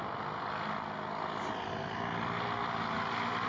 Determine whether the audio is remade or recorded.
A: recorded